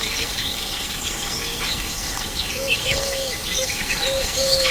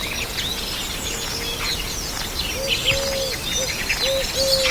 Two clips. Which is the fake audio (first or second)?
first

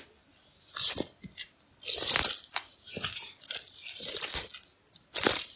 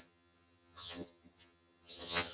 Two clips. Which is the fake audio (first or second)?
second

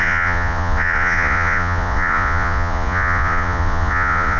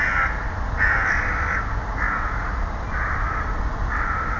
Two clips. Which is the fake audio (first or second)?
first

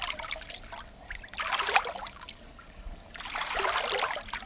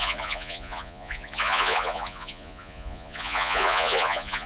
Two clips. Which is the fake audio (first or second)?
second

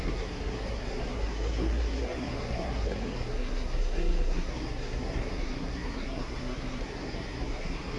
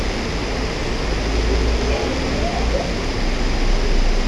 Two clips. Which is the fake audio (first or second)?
first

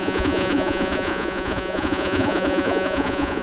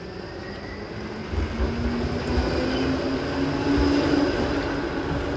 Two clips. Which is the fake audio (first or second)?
first